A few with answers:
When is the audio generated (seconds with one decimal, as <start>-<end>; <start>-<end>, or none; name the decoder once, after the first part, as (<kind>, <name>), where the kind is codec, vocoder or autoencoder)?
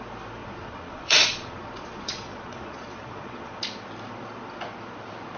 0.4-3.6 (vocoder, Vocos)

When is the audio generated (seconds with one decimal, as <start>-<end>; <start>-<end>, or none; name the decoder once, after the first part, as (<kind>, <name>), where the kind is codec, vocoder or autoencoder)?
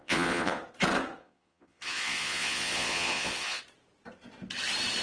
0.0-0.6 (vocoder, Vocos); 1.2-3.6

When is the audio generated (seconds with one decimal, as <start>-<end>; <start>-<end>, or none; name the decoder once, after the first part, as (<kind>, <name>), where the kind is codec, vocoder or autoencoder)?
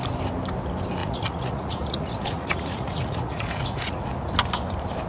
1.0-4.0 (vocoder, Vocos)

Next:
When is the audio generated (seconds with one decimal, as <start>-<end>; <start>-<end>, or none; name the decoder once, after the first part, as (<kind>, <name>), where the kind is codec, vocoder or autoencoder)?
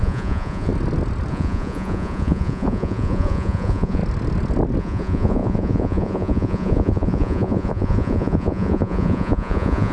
0.0-0.7 (vocoder, Vocos); 1.3-4.0; 4.8-9.9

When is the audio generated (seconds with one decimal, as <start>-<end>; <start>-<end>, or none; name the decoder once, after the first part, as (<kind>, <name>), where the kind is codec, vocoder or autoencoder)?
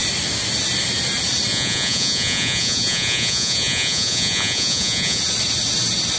1.5-5.2 (vocoder, Vocos)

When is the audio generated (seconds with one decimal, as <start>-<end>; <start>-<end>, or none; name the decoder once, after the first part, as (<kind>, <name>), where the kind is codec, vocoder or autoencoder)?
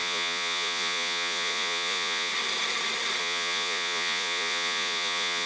0.0-2.3 (vocoder, Vocos); 3.2-5.5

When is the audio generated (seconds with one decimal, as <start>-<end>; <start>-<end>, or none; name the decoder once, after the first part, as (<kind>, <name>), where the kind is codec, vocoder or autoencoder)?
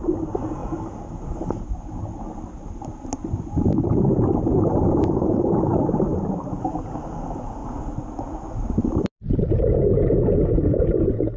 none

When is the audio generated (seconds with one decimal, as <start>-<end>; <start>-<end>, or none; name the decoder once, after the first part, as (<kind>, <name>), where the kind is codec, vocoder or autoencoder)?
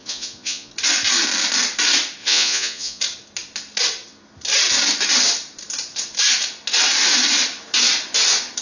0.0-0.7 (vocoder, Vocos); 2.2-3.0